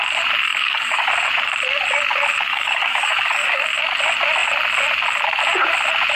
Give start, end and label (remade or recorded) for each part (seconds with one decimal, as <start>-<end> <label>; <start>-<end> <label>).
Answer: 0.0-0.5 recorded; 0.5-1.1 remade; 1.1-2.5 recorded; 2.5-3.6 remade; 3.6-6.1 recorded